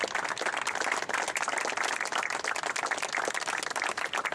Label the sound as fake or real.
real